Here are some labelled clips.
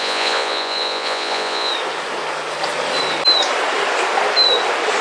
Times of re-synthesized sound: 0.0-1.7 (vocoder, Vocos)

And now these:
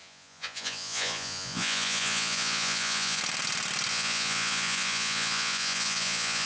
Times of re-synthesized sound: 0.0-3.2 (vocoder, Vocos); 3.9-6.5

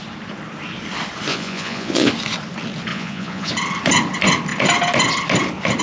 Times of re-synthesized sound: 1.3-2.1 (vocoder, Vocos); 2.9-3.5

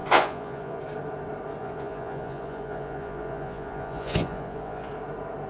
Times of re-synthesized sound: 0.0-0.8 (vocoder, Vocos); 1.6-4.9

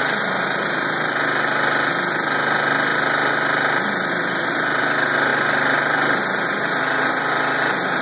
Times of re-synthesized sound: none

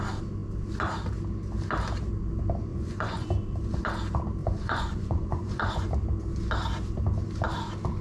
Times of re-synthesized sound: 2.7-3.3 (vocoder, Vocos); 4.4-5.9

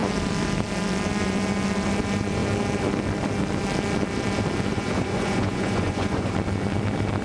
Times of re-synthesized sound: 4.7-6.3 (vocoder, Vocos)

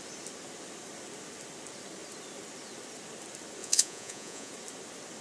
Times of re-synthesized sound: 3.6-4.5 (vocoder, Vocos)